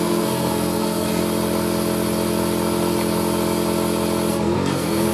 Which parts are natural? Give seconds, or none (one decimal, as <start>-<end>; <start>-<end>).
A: 1.2-4.3